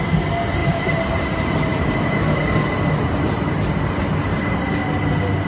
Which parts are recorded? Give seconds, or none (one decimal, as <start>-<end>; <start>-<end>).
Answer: 0.0-5.5